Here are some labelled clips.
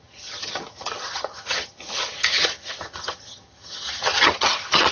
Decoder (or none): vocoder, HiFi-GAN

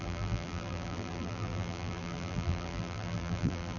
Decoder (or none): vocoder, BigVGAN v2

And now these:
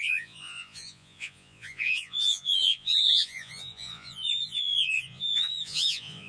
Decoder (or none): vocoder, Vocos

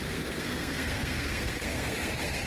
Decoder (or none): codec, SNAC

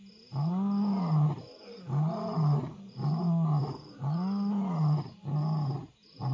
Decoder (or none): none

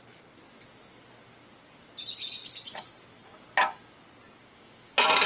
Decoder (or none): none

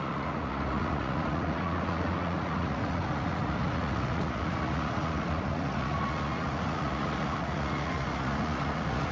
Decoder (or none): vocoder, Vocos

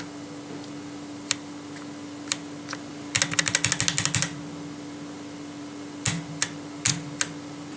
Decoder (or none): none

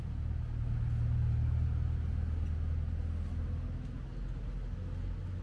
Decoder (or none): none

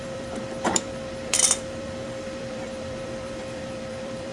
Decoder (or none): vocoder, BigVGAN v2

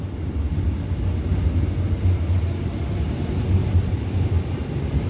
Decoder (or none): none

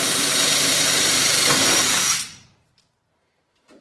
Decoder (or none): vocoder, BigVGAN v2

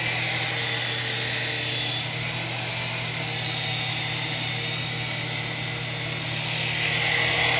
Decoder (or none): none